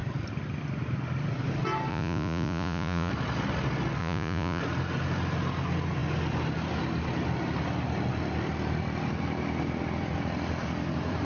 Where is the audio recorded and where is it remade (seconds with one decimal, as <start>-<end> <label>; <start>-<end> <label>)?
0.0-1.9 recorded; 1.9-3.1 remade; 3.1-4.0 recorded; 4.0-4.6 remade; 4.6-11.2 recorded